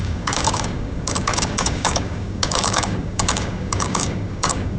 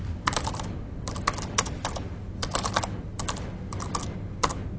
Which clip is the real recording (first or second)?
second